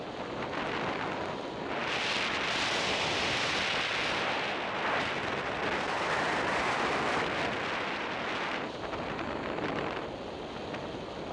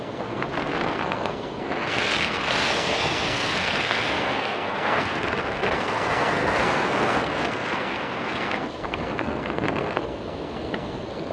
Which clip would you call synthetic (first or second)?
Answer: second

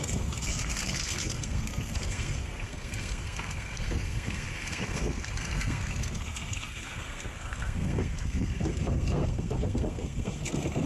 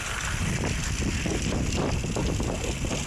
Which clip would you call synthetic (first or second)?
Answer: first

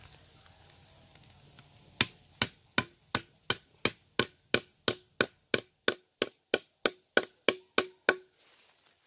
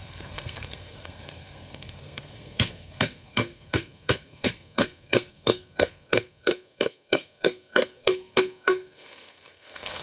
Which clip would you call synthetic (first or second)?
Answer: second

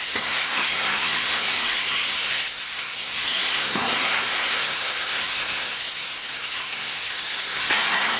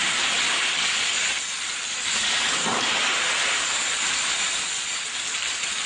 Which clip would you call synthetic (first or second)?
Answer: first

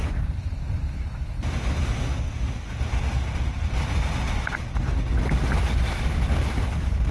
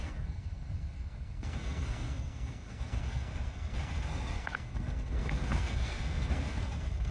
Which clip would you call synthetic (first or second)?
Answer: second